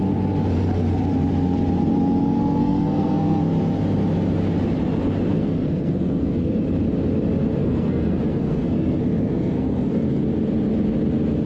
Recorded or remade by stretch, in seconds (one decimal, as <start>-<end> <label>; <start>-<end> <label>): 0.0-2.4 recorded; 2.4-3.4 remade; 3.4-5.3 recorded; 5.3-6.6 remade; 6.6-7.6 recorded; 7.6-10.2 remade; 10.2-11.5 recorded